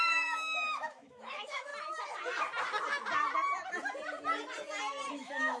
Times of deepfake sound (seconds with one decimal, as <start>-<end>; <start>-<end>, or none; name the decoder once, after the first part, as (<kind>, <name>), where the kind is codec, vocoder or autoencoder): 0.0-1.7 (autoencoder, DAC-VAE); 5.1-5.6